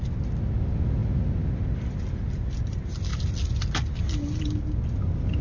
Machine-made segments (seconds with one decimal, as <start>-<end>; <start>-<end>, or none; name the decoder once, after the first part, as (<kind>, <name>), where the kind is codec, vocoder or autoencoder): none